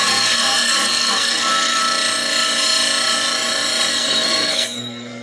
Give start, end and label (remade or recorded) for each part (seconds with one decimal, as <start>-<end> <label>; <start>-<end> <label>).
0.0-1.8 remade; 1.8-3.9 recorded; 3.9-5.2 remade